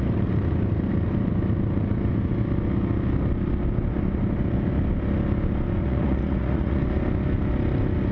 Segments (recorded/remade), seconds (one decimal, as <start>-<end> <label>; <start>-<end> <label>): 0.0-5.8 recorded; 5.8-6.8 remade; 6.8-8.1 recorded